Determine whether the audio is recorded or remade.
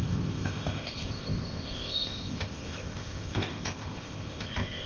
remade